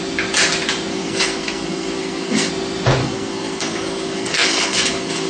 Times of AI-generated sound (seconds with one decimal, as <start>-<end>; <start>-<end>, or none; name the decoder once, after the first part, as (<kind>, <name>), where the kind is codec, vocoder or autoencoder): 0.9-2.5 (codec, SNAC); 3.0-5.3